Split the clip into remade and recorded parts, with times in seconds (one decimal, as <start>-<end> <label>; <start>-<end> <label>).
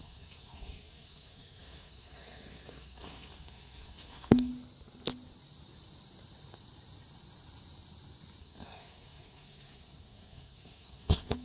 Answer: 0.0-4.5 remade; 4.5-8.4 recorded; 8.4-11.4 remade